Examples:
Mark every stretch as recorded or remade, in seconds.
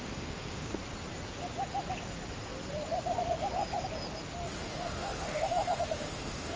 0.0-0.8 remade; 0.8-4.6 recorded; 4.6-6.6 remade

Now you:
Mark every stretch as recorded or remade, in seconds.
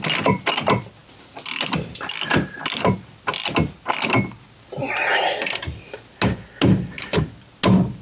0.0-8.0 recorded